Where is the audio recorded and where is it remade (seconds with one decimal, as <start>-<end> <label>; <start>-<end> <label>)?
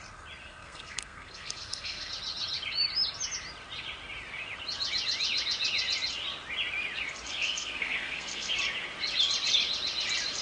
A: 0.0-0.4 recorded; 0.4-2.1 remade; 2.1-7.3 recorded; 7.3-8.5 remade; 8.5-10.4 recorded